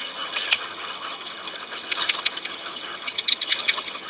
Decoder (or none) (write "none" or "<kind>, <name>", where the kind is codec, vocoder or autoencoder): vocoder, HiFi-GAN